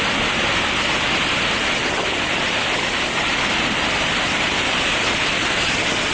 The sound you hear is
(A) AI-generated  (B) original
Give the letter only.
B